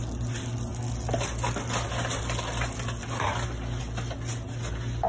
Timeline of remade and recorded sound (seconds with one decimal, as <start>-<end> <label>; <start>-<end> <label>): 0.0-5.1 recorded

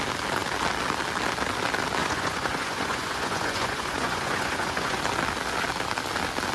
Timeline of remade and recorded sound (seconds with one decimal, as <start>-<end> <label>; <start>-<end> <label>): 0.0-2.0 recorded; 2.0-5.0 remade; 5.0-6.5 recorded